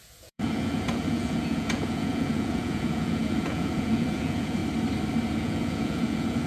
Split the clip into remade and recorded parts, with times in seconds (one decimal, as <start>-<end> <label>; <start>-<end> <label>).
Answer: 0.0-4.6 remade; 4.6-5.4 recorded; 5.4-6.5 remade

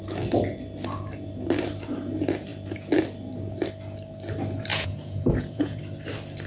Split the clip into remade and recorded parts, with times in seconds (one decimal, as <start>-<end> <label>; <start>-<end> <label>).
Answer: 0.0-4.7 recorded; 4.7-5.8 remade; 5.8-6.5 recorded

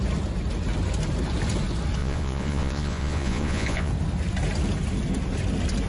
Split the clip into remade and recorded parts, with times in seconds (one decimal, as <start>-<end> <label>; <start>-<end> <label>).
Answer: 0.0-2.0 recorded; 2.0-3.9 remade; 3.9-5.9 recorded

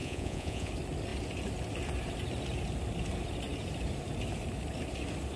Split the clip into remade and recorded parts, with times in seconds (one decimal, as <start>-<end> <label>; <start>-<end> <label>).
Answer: 0.0-0.7 remade; 0.7-5.4 recorded